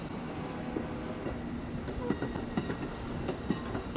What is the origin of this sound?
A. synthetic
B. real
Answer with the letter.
B